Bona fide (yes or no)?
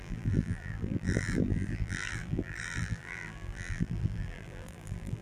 no